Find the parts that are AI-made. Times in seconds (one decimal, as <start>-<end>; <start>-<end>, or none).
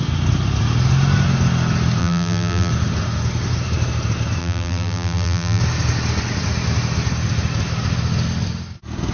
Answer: 2.0-2.7; 4.4-5.6